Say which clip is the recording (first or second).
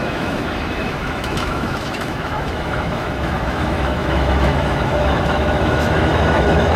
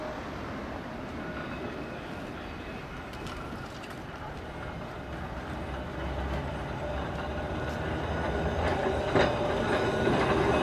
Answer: second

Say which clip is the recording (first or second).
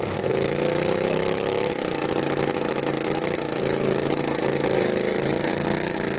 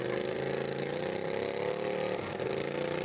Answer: second